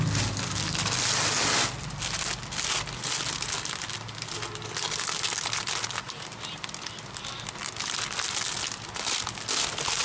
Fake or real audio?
real